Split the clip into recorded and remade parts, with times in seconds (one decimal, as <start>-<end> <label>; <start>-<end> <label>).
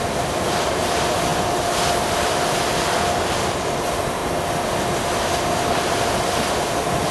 0.0-4.2 remade; 4.2-6.5 recorded; 6.5-7.1 remade